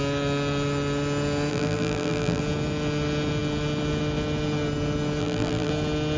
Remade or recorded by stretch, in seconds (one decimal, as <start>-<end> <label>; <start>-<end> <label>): 0.0-1.5 recorded; 1.5-2.4 remade; 2.4-5.2 recorded; 5.2-5.7 remade; 5.7-6.2 recorded